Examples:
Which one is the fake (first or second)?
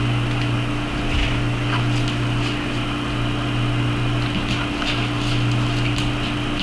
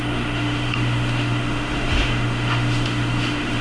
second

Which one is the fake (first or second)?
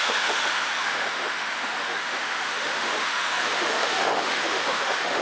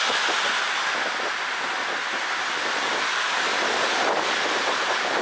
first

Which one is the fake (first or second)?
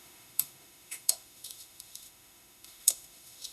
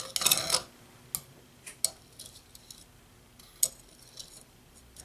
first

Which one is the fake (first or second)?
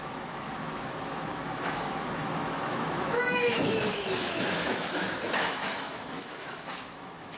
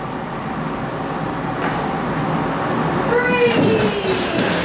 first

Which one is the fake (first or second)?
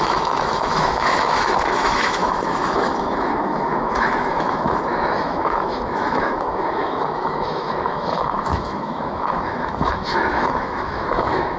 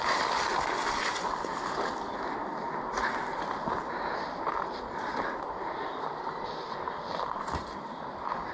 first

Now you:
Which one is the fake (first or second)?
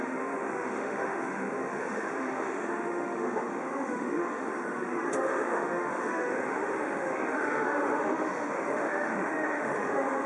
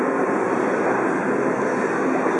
first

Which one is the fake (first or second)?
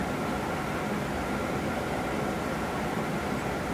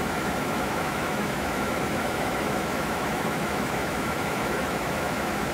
second